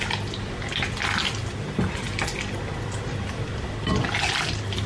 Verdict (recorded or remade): recorded